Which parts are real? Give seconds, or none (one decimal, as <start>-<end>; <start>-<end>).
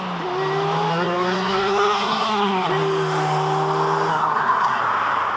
0.0-0.9; 2.7-4.1; 4.8-5.4